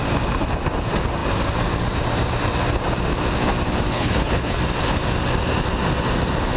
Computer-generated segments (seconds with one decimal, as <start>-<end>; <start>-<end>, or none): 3.9-4.6